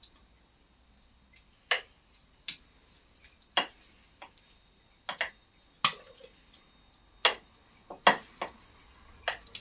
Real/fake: real